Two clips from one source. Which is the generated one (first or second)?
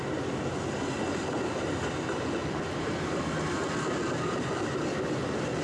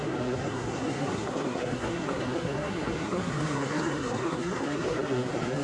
second